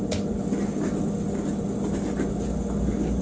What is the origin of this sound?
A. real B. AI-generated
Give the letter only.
A